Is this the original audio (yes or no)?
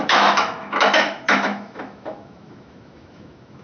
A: no